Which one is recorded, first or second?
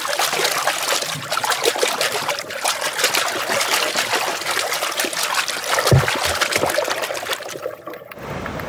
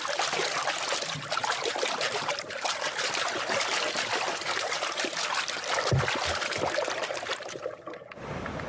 first